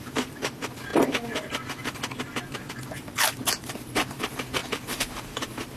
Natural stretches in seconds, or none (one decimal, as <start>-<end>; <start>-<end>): 0.9-2.9